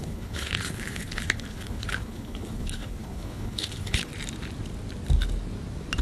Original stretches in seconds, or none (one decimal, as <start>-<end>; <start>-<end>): 4.1-6.0